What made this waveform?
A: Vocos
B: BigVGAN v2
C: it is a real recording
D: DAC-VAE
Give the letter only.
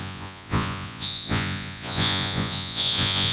A